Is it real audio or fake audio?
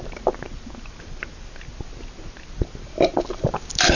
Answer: real